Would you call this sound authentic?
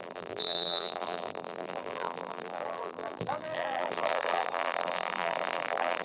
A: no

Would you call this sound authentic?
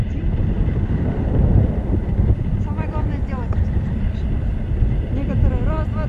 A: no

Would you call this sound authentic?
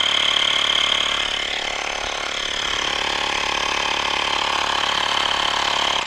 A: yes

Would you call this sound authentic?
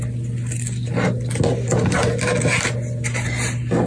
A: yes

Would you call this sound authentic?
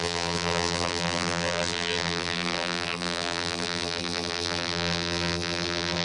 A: no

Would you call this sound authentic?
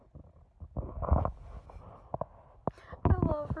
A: yes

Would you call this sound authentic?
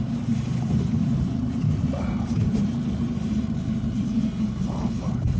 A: no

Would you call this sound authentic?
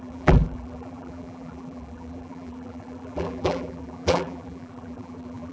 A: no